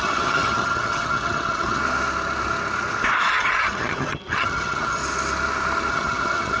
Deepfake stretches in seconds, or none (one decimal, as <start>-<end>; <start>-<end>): 0.0-1.8; 3.3-5.0; 5.9-6.6